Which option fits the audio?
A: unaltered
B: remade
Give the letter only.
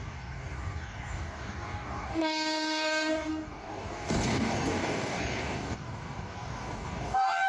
B